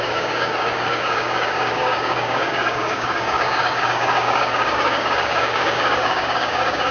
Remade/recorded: remade